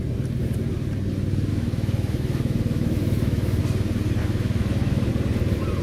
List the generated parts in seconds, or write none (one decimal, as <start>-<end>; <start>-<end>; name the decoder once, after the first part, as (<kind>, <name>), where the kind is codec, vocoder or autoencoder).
1.5-3.6 (autoencoder, DAC-VAE); 4.2-5.1